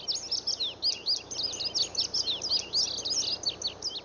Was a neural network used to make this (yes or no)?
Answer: no